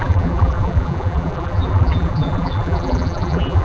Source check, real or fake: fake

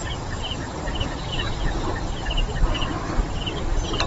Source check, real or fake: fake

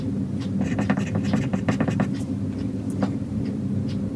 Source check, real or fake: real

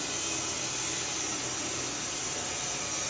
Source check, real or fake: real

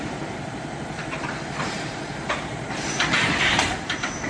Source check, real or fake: fake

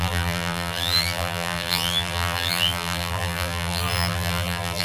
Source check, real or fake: fake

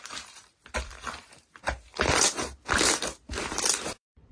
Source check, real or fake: fake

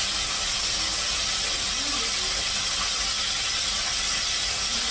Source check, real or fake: real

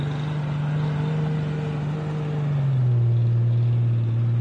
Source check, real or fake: real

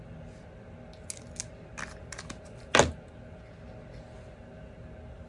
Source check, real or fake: real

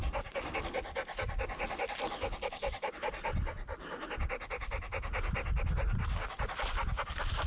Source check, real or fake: real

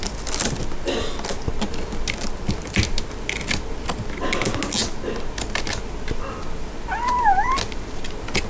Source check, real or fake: real